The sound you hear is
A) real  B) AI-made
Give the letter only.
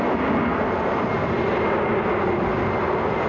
A